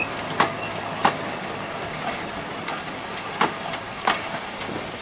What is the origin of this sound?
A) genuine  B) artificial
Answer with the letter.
A